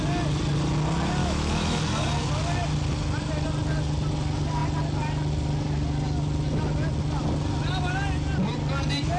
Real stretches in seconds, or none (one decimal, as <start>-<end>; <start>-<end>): 0.0-1.2; 1.8-9.2